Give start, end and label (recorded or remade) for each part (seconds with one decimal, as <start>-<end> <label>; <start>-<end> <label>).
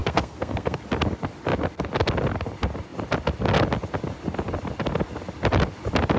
0.0-0.8 remade; 0.8-6.2 recorded